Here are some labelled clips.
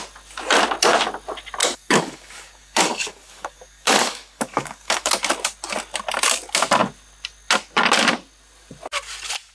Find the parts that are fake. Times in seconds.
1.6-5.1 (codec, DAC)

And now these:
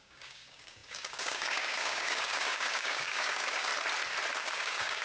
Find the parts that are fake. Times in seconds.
0.0-3.7 (codec, DAC); 4.4-5.0

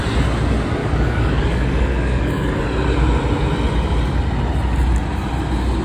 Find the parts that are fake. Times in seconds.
0.8-2.6 (codec, DAC)

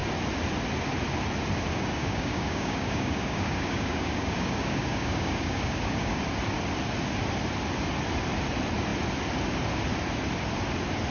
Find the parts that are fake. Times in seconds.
1.7-6.2 (codec, DAC)

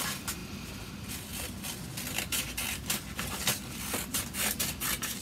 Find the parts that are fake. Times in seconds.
none

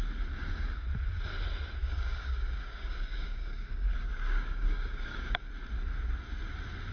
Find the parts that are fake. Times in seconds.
1.8-5.5 (codec, DAC)